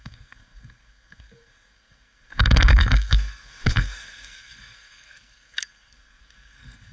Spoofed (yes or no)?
yes